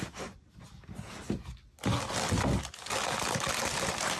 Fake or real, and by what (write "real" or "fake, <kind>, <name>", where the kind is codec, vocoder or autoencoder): real